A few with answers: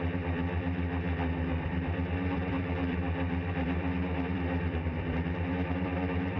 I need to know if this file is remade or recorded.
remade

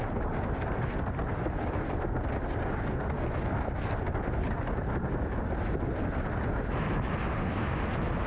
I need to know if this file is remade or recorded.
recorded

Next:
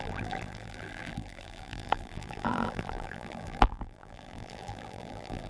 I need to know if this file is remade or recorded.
remade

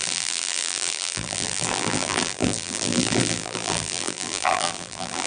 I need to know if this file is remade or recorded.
remade